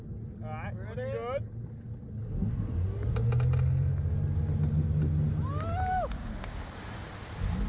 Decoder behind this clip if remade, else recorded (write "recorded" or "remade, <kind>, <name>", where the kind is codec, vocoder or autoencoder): recorded